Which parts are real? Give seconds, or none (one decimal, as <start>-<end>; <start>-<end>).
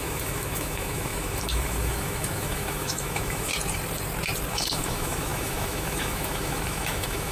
3.5-4.5